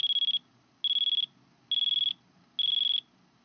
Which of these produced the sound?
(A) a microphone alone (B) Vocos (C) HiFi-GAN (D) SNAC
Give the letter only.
A